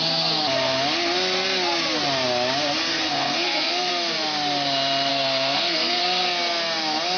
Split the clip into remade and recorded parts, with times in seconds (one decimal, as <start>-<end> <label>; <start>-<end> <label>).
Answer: 0.0-2.9 recorded; 2.9-3.9 remade; 3.9-5.1 recorded; 5.1-6.0 remade; 6.0-7.2 recorded